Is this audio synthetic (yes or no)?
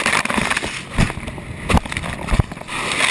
no